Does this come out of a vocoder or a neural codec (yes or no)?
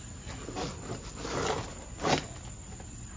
no